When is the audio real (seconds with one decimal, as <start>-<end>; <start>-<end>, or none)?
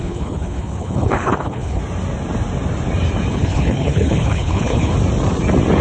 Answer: 1.8-3.3; 4.9-5.8